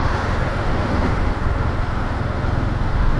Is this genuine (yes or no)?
no